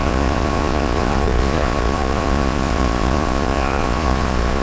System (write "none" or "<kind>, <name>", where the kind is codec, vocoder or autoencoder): vocoder, Vocos